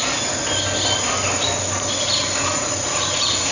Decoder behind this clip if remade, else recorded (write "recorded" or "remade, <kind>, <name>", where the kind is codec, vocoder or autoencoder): recorded